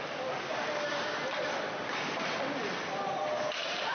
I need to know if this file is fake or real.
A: real